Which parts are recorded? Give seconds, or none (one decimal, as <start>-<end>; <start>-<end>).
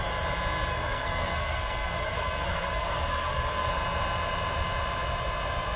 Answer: 0.0-0.7; 3.7-5.8